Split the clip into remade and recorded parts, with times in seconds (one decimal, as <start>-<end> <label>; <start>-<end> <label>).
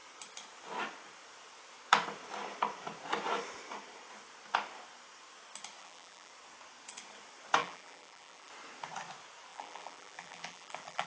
0.0-5.8 recorded; 5.8-6.3 remade; 6.3-7.6 recorded; 7.6-8.5 remade; 8.5-9.5 recorded; 9.5-11.1 remade